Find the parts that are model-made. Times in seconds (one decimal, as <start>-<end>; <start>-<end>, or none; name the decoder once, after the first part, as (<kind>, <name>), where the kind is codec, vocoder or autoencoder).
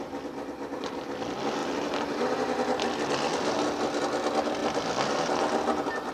none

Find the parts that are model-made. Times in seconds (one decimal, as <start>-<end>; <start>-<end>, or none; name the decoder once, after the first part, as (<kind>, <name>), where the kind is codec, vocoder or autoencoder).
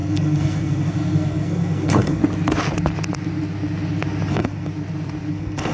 0.0-2.2 (codec, SNAC); 4.3-4.7; 5.3-5.7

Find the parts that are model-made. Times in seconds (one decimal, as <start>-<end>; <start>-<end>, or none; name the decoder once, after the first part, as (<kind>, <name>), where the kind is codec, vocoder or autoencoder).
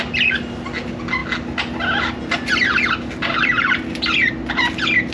none